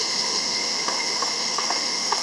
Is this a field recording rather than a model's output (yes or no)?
no